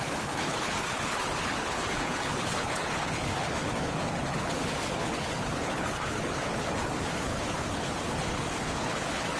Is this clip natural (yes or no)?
no